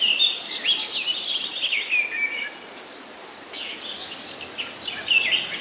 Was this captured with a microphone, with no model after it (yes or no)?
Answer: yes